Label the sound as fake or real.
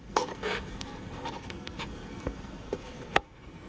fake